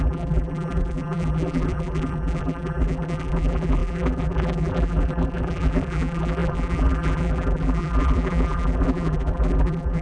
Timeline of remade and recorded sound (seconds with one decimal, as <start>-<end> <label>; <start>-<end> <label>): 0.0-10.0 remade